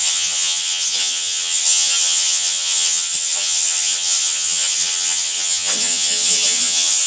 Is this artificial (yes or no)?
yes